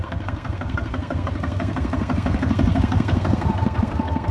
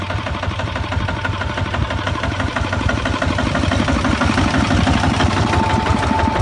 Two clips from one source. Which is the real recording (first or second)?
second